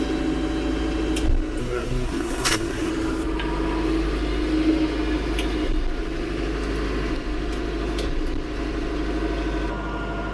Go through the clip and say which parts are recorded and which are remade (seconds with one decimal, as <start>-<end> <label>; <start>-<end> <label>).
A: 0.0-1.6 recorded; 1.6-2.9 remade; 2.9-10.3 recorded